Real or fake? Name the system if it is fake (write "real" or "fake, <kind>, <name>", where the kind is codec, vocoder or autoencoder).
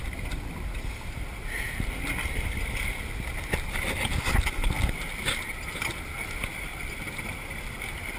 real